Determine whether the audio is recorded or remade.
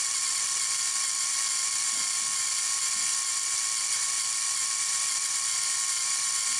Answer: recorded